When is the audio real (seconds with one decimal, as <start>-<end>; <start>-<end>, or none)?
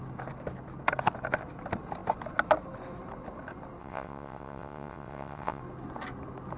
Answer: 0.0-3.8; 5.6-6.6